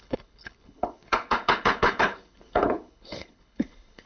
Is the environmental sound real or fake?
fake